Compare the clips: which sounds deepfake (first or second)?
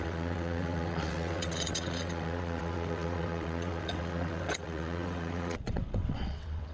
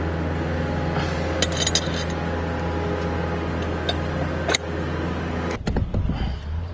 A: first